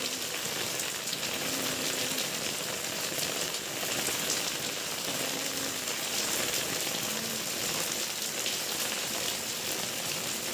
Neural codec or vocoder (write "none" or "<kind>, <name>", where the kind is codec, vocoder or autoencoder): none